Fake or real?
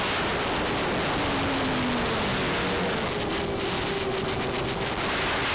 real